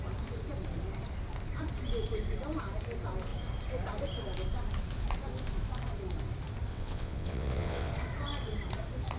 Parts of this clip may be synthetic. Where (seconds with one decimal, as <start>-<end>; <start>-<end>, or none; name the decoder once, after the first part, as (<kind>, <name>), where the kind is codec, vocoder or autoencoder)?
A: 6.7-7.9 (vocoder, WaveNeXt)